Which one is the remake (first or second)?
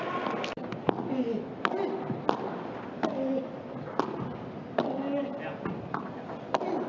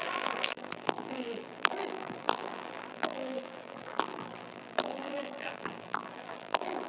second